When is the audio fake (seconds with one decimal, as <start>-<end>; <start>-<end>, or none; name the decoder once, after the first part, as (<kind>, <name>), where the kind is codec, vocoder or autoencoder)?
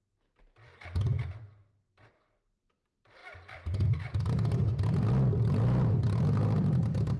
none